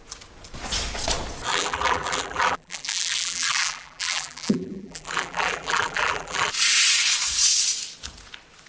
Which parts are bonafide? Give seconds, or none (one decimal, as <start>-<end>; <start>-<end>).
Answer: 0.0-1.5; 6.5-8.7